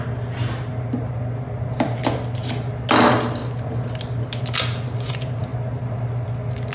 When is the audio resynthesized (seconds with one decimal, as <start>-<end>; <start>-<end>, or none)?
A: none